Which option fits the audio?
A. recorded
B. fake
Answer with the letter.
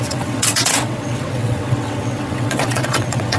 B